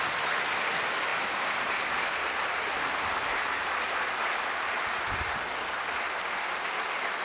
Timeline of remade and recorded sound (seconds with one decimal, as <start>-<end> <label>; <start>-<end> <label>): 0.0-1.1 recorded; 1.1-4.4 remade; 4.4-7.2 recorded